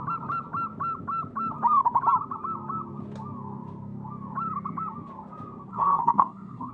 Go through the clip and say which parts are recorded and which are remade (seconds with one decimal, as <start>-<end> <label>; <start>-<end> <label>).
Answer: 0.0-5.7 recorded; 5.7-6.7 remade